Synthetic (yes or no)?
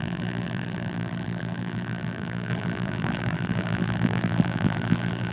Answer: yes